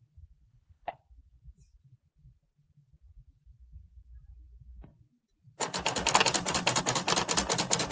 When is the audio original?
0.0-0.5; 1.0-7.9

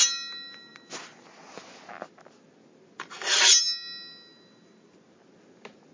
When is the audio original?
0.0-5.9

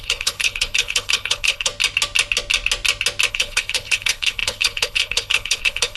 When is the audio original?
1.7-3.3

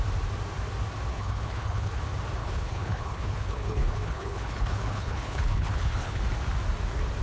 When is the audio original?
0.0-1.1; 2.0-2.4; 6.2-7.2

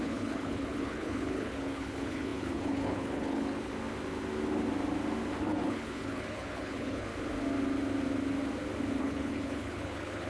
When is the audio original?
3.7-5.4; 7.1-9.0